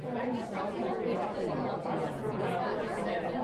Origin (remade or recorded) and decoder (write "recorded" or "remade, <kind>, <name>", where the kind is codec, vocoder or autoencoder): remade, vocoder, Vocos